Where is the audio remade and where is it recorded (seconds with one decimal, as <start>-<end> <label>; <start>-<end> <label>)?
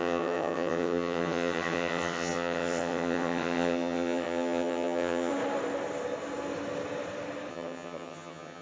0.0-5.3 remade; 5.3-7.5 recorded; 7.5-8.6 remade